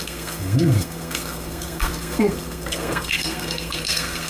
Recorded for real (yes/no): no